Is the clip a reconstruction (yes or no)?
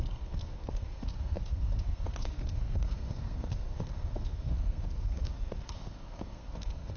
yes